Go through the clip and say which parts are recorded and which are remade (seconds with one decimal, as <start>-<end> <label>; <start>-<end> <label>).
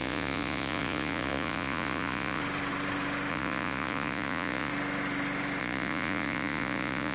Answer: 0.0-2.4 remade; 2.4-3.3 recorded; 3.3-4.7 remade; 4.7-5.6 recorded; 5.6-7.1 remade